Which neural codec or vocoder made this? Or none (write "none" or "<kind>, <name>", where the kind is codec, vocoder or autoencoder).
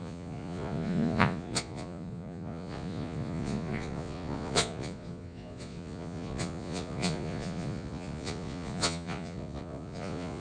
vocoder, Vocos